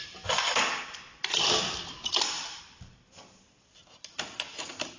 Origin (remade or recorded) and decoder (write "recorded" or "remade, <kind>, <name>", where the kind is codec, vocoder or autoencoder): recorded